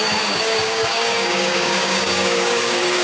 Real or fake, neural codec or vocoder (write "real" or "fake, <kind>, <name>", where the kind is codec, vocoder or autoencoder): fake, codec, DAC